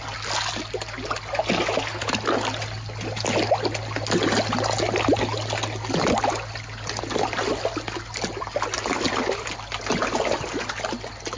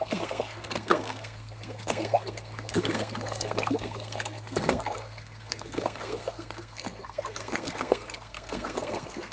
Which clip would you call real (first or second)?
first